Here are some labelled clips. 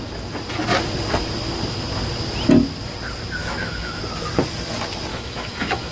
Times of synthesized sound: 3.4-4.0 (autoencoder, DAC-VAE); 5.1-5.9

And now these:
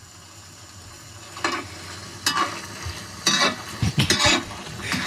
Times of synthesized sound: none